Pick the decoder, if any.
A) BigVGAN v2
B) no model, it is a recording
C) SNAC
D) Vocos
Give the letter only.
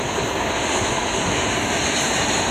B